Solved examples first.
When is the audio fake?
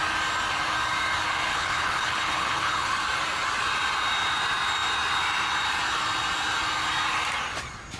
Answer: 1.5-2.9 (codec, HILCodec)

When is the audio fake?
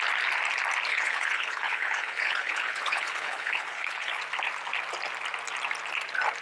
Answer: 0.9-4.2 (codec, HILCodec)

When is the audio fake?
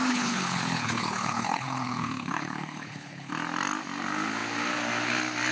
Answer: 0.0-3.3 (codec, HILCodec)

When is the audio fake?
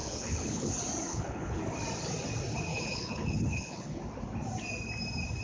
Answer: 0.0-0.7 (codec, HILCodec); 1.1-1.6; 2.7-4.0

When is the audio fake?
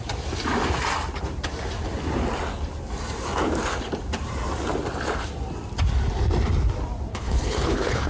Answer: 7.1-8.1 (codec, HILCodec)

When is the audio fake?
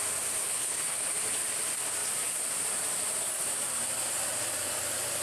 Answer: 0.4-1.1 (codec, HILCodec)